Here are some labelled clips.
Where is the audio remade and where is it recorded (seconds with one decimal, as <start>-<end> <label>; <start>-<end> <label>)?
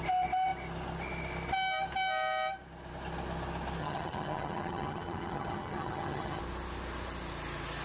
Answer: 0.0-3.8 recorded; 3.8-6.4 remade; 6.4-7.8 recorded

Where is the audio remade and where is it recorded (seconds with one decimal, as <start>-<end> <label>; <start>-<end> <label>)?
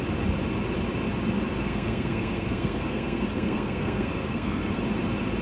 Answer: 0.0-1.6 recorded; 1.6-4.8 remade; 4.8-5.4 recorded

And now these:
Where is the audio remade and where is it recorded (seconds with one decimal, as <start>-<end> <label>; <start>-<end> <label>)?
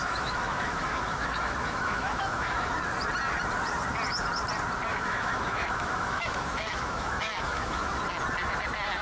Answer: 0.0-2.7 remade; 2.7-4.9 recorded; 4.9-8.0 remade; 8.0-9.0 recorded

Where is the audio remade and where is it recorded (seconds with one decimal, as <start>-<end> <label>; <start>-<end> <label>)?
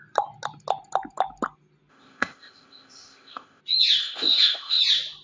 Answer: 0.0-1.9 recorded; 1.9-3.6 remade; 3.6-4.0 recorded; 4.0-4.8 remade; 4.8-5.2 recorded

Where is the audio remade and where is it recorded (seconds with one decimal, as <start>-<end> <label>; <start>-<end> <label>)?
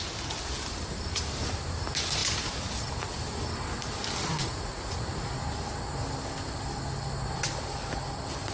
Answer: 0.0-4.4 recorded; 4.4-5.0 remade; 5.0-8.5 recorded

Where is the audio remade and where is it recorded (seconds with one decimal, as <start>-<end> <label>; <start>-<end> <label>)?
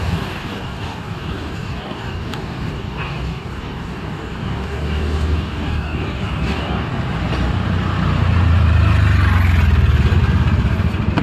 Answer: 0.0-6.9 remade; 6.9-11.2 recorded